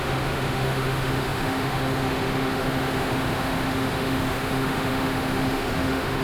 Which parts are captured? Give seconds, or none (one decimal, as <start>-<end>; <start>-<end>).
none